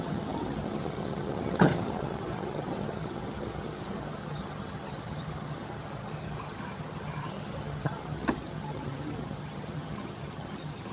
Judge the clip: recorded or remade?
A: remade